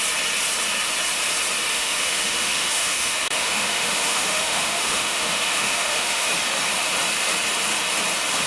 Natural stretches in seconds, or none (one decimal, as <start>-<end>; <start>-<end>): 0.0-1.7; 6.3-8.5